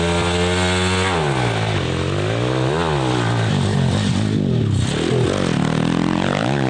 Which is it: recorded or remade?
recorded